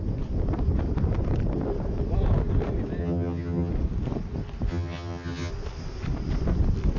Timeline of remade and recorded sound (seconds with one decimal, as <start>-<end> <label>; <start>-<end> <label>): 0.0-3.0 recorded; 3.0-3.7 remade; 3.7-4.7 recorded; 4.7-5.5 remade; 5.5-7.0 recorded